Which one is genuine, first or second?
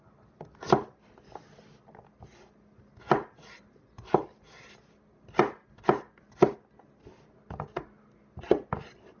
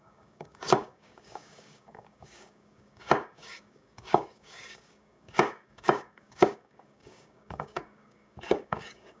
first